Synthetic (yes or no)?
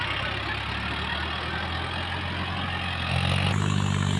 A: no